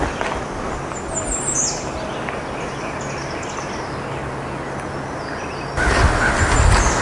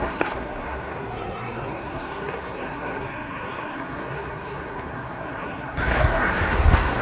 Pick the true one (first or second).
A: first